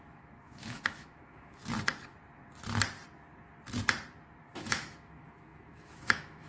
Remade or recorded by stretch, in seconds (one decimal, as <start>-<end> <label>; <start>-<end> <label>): 0.0-1.6 remade; 1.6-4.5 recorded; 4.5-6.5 remade